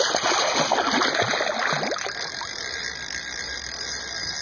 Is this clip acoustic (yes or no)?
yes